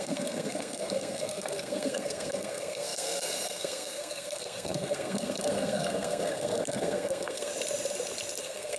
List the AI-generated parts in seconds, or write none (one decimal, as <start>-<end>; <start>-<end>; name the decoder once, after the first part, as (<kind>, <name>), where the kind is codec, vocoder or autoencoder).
0.0-7.5 (codec, SNAC); 8.4-8.8